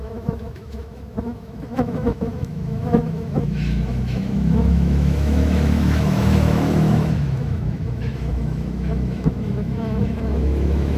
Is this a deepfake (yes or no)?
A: yes